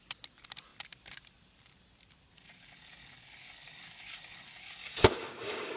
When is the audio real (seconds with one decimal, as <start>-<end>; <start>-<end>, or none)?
0.0-4.8